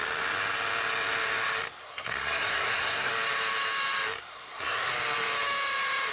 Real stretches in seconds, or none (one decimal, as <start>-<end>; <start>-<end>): 0.0-1.8; 3.1-4.3; 4.9-6.1